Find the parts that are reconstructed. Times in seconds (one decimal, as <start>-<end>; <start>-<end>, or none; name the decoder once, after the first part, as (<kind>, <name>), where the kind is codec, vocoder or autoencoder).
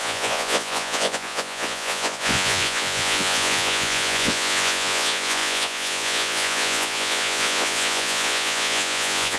0.0-9.4 (vocoder, Vocos)